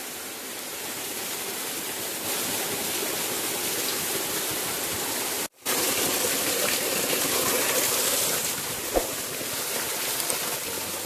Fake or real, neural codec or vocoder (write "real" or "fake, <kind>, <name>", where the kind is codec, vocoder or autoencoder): real